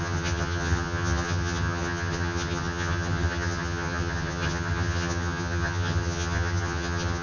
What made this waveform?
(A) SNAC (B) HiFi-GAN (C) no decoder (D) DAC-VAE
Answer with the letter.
B